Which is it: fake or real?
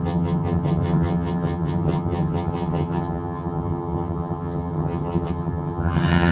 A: fake